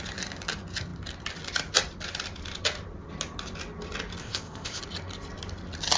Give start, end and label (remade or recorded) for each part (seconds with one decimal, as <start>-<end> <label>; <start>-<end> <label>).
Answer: 0.0-4.2 recorded; 4.2-4.8 remade; 4.8-6.0 recorded